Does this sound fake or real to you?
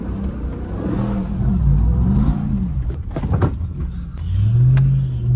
real